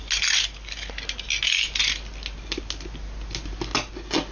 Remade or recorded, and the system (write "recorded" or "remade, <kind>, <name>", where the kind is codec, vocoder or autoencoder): recorded